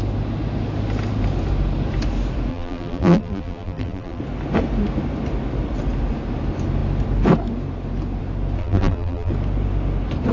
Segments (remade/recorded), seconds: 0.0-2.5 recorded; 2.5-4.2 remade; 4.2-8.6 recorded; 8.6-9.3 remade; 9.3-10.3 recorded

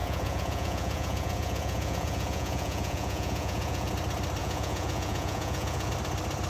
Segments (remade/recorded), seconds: 0.0-3.9 remade; 3.9-4.4 recorded; 4.4-5.9 remade; 5.9-6.5 recorded

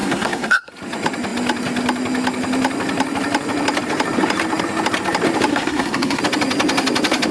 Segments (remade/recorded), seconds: 0.0-0.7 remade; 0.7-5.5 recorded; 5.5-6.2 remade; 6.2-7.3 recorded

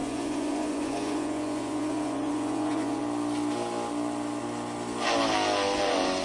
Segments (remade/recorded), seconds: 0.0-3.0 remade; 3.0-5.8 recorded; 5.8-6.2 remade

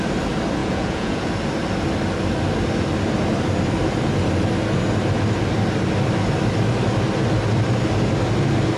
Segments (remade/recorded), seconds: 0.0-0.6 recorded; 0.6-1.3 remade; 1.3-8.8 recorded